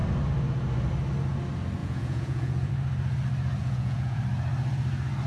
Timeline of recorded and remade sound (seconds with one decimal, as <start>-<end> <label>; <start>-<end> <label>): 0.0-1.8 recorded; 1.8-2.7 remade; 2.7-3.6 recorded; 3.6-4.2 remade; 4.2-5.3 recorded